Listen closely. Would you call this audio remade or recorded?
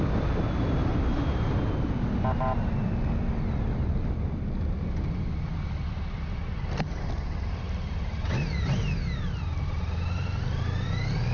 recorded